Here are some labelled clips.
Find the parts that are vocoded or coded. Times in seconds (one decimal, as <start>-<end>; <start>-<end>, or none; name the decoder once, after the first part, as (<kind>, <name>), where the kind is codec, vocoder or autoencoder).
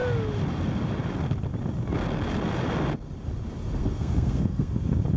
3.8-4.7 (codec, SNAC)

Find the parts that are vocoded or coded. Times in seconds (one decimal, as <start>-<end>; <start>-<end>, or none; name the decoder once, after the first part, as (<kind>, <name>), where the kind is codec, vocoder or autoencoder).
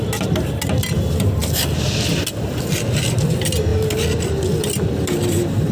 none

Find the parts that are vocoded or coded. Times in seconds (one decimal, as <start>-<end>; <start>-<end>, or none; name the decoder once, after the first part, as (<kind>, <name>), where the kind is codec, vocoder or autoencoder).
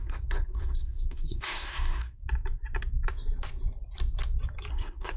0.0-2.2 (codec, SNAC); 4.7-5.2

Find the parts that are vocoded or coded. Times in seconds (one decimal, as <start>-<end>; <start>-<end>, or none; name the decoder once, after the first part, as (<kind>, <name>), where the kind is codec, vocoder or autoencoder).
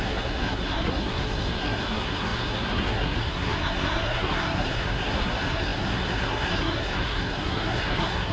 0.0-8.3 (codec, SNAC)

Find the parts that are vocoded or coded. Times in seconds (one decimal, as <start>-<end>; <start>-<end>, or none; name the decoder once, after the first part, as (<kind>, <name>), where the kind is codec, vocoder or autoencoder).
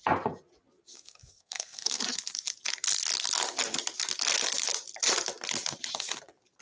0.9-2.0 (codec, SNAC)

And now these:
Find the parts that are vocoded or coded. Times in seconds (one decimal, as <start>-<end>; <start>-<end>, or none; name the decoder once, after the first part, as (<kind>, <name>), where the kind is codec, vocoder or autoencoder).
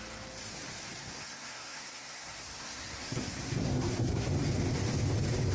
1.0-4.3 (codec, SNAC)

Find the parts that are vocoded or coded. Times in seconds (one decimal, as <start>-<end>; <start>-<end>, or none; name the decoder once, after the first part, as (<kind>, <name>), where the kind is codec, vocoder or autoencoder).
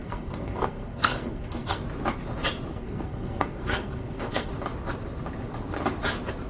0.0-1.8 (codec, SNAC); 2.7-4.5